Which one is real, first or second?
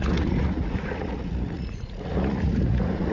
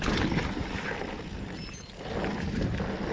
second